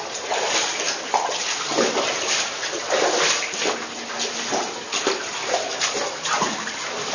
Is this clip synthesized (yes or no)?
no